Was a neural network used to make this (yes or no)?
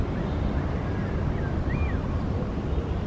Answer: no